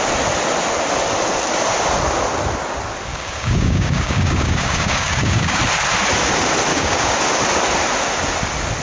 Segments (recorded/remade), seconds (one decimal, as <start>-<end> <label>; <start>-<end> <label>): 0.0-3.1 recorded; 3.1-5.6 remade; 5.6-6.7 recorded; 6.7-7.2 remade; 7.2-8.8 recorded